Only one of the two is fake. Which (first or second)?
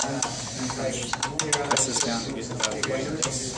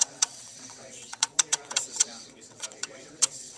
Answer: second